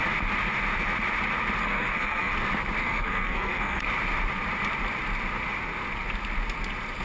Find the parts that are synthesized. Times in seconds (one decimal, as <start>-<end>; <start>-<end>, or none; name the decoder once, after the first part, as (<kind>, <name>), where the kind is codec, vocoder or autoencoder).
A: 1.6-2.3 (codec, SNAC); 2.8-3.8